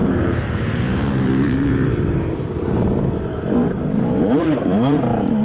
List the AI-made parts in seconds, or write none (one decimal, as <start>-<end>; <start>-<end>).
0.0-5.4